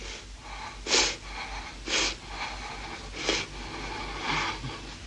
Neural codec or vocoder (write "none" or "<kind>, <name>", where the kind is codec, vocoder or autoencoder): none